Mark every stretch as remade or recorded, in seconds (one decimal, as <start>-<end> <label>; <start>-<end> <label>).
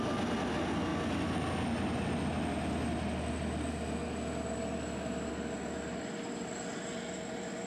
0.0-7.7 recorded